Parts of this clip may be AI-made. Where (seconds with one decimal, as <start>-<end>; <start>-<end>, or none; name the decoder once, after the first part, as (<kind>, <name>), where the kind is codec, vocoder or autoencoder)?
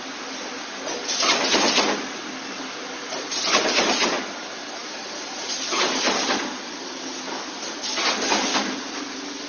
none